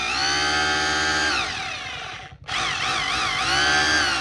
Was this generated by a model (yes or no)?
no